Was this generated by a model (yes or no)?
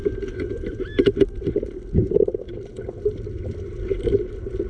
no